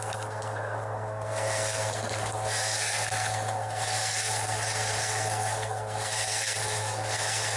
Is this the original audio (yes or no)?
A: no